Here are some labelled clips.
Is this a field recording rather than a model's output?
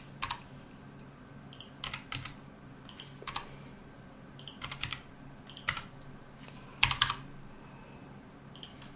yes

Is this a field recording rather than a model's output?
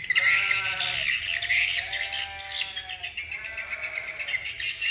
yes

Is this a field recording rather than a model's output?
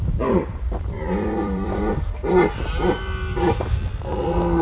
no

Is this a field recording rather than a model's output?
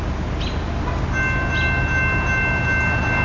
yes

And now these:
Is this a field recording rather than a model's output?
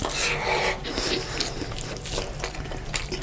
yes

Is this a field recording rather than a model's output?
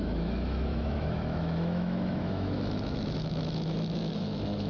no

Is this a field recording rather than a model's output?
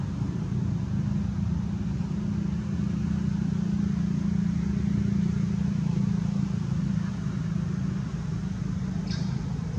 yes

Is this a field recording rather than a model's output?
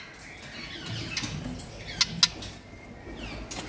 yes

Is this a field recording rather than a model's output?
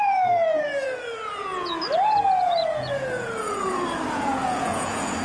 no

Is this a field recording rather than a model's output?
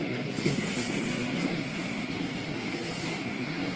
no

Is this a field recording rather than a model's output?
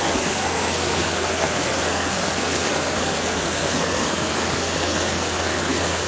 no